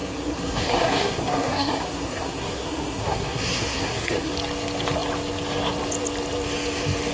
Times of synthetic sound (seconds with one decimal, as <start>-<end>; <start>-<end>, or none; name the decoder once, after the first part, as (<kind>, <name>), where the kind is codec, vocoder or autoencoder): 0.0-4.3 (codec, SNAC)